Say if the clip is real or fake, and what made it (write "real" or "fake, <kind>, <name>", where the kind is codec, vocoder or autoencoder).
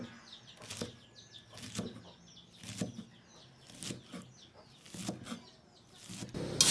real